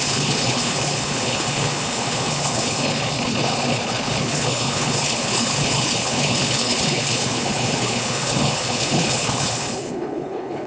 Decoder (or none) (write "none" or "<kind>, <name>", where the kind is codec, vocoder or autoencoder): codec, HILCodec